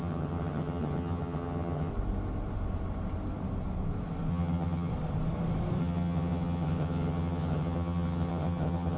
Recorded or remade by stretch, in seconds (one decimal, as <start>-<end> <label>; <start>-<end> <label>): 0.0-1.9 remade; 1.9-4.3 recorded; 4.3-4.9 remade; 4.9-5.8 recorded; 5.8-9.0 remade